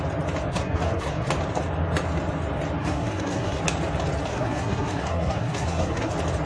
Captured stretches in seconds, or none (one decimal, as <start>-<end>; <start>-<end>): 0.0-0.5; 1.3-2.8; 3.6-4.3; 6.1-6.5